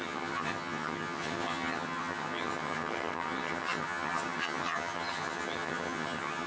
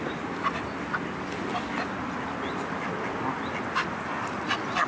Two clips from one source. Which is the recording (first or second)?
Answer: second